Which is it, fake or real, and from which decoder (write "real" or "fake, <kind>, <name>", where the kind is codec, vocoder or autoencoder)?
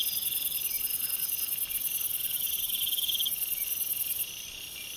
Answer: real